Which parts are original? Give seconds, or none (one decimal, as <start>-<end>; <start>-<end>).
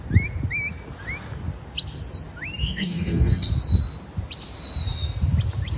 0.0-2.6; 3.5-5.8